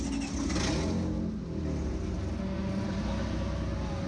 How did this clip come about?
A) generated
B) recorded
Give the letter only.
B